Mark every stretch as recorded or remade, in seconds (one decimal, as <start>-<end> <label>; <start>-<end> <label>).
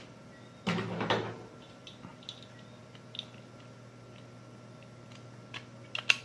0.0-6.2 recorded